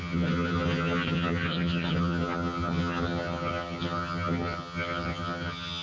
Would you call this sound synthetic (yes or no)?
yes